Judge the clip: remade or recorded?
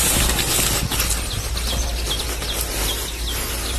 recorded